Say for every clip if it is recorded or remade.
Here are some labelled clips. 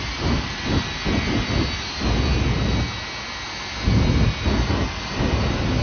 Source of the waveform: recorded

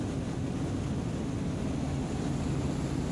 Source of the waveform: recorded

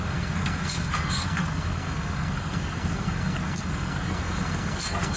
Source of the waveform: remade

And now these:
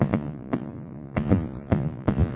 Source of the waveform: remade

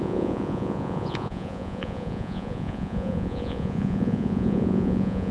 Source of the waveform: remade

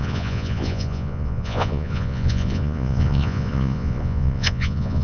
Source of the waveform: remade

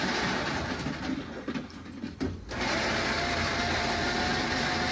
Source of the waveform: recorded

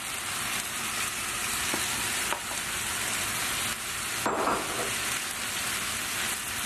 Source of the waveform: recorded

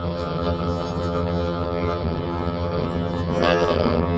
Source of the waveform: remade